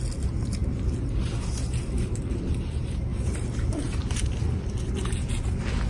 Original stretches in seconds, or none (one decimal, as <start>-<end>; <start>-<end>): 0.0-0.6; 2.5-3.1; 5.3-5.9